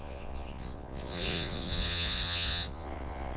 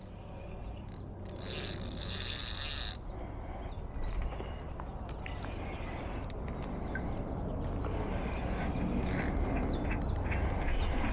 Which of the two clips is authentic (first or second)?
second